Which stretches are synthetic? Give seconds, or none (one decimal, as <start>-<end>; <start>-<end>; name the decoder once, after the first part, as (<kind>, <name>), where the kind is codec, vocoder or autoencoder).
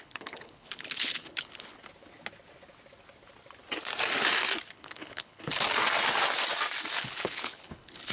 0.0-1.8 (codec, HILCodec); 4.7-5.5; 7.0-8.1